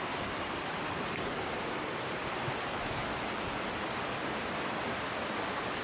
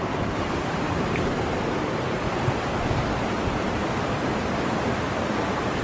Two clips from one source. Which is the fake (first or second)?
second